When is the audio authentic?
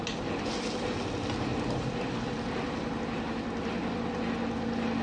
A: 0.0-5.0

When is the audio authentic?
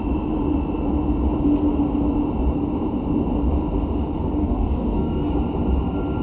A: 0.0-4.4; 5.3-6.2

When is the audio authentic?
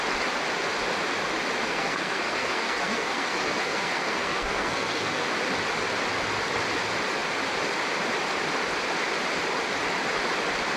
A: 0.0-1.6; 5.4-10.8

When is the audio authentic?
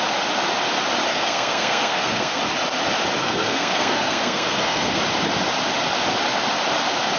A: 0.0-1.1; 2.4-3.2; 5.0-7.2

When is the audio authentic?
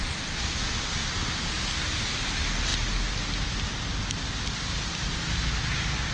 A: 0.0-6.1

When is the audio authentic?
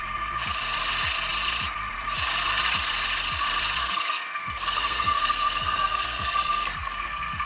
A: 0.0-3.8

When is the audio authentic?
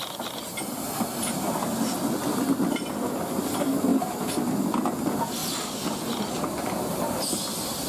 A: 0.0-7.9